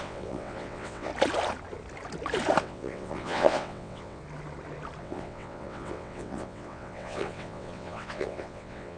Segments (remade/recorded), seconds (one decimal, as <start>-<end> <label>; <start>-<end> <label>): 0.0-1.1 remade; 1.1-2.6 recorded; 2.6-4.2 remade; 4.2-5.0 recorded; 5.0-9.0 remade